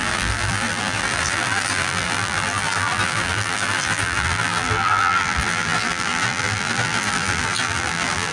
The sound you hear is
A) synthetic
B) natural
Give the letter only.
A